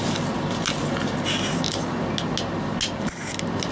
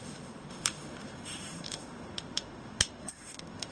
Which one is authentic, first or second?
first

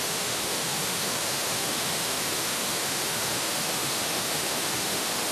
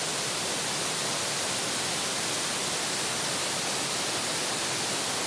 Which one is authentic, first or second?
second